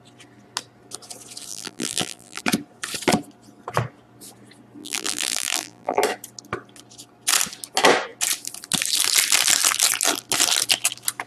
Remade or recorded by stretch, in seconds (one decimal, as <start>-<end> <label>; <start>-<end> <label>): 0.0-1.5 recorded; 1.5-2.4 remade; 2.4-4.8 recorded; 4.8-6.0 remade; 6.0-11.3 recorded